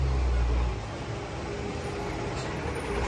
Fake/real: real